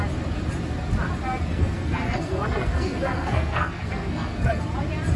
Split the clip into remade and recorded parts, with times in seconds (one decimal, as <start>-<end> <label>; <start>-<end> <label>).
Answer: 0.0-1.5 recorded; 1.5-4.6 remade; 4.6-5.2 recorded